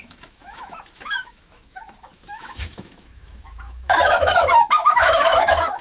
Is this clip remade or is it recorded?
remade